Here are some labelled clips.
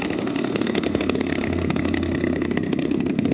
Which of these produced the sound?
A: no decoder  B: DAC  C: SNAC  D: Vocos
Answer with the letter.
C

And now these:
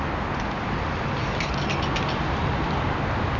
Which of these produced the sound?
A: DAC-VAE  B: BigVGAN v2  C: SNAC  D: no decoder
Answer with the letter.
D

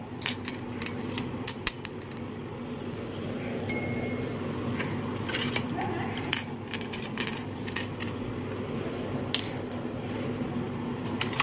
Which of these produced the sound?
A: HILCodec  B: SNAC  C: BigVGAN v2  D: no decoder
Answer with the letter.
D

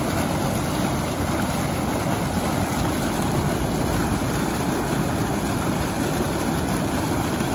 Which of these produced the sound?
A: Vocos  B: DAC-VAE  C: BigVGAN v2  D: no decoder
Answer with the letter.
D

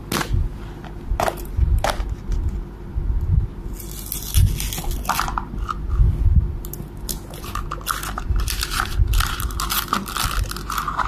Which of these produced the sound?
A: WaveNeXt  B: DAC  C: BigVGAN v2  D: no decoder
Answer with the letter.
D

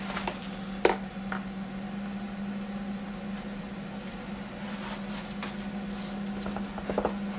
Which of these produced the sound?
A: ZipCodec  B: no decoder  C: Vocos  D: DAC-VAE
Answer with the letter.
B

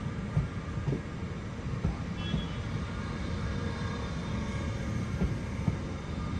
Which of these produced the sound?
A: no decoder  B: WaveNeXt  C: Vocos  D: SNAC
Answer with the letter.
A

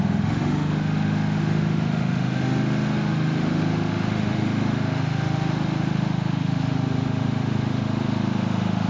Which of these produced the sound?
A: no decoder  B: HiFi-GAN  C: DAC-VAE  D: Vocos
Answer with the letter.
C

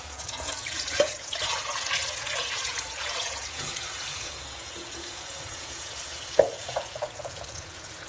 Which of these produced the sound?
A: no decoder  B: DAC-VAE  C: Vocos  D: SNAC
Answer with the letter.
C